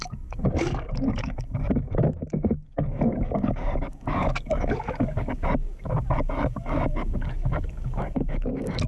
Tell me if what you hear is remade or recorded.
remade